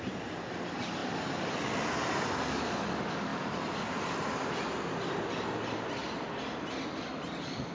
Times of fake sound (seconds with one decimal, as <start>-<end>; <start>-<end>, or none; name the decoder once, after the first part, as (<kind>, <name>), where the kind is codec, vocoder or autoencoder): 1.0-1.5 (vocoder, BigVGAN v2); 3.3-4.5